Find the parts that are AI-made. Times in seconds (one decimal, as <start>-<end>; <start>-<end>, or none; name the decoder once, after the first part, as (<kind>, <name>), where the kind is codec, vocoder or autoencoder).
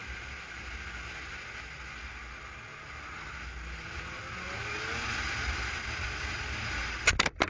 none